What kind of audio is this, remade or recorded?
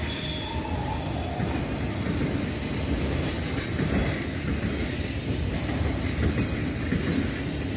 recorded